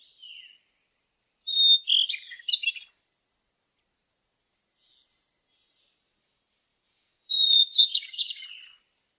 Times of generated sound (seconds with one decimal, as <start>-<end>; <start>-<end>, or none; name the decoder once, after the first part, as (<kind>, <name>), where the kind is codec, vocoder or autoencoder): 6.7-8.3 (vocoder, Vocos)